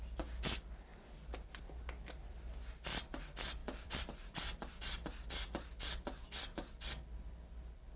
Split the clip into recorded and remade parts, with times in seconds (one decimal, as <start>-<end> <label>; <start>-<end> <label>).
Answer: 0.0-3.6 recorded; 3.6-4.8 remade; 4.8-8.0 recorded